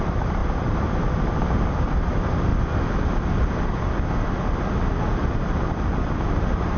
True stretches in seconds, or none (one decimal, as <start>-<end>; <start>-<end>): 0.4-1.4; 2.5-6.0